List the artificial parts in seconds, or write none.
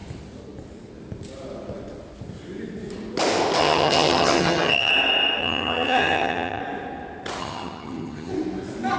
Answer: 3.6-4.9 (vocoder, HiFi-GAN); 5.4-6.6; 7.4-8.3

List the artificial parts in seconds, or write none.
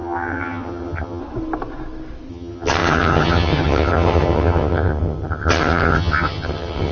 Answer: 0.0-1.2 (vocoder, HiFi-GAN); 2.3-6.9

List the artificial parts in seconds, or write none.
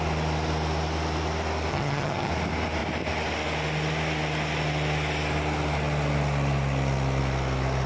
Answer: 1.7-2.3 (vocoder, HiFi-GAN)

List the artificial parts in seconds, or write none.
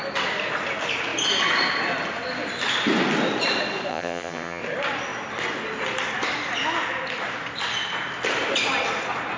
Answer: 3.9-4.6 (vocoder, HiFi-GAN)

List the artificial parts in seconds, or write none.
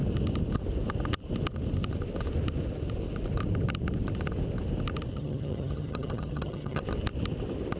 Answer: 5.1-6.8 (vocoder, HiFi-GAN)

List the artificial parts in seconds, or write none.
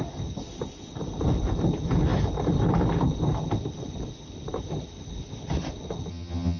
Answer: 6.1-6.6 (vocoder, HiFi-GAN)